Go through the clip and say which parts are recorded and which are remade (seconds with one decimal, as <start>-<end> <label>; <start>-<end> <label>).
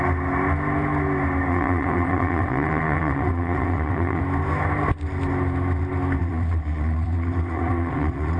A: 0.0-1.5 recorded; 1.5-4.2 remade; 4.2-6.2 recorded; 6.2-8.4 remade